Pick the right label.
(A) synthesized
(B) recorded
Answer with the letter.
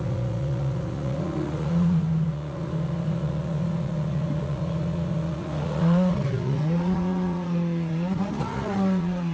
A